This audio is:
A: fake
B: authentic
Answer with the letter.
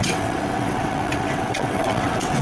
A